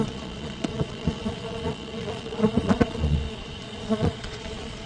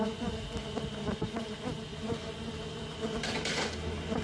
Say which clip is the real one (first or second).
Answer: second